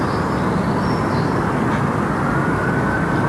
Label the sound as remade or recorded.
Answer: recorded